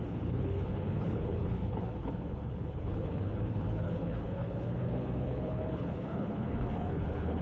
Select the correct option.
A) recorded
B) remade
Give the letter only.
B